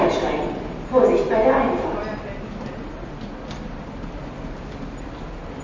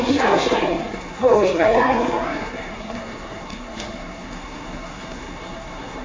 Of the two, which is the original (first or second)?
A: first